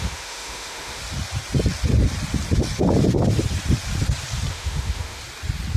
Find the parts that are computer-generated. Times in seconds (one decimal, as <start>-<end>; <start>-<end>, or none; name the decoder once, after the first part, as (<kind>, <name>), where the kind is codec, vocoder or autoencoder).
0.0-1.0 (autoencoder, DAC-VAE); 4.5-5.2